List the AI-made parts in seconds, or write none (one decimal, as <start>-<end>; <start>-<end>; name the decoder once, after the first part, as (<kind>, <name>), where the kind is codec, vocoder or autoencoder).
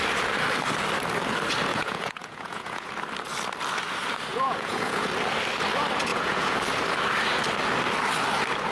1.7-2.9 (vocoder, Vocos); 4.3-5.1; 6.1-6.6